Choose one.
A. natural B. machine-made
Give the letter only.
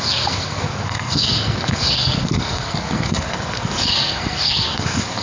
B